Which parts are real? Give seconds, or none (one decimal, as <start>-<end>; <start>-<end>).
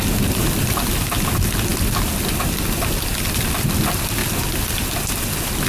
0.0-5.7